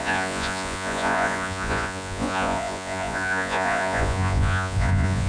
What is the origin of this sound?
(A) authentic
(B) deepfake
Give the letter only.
B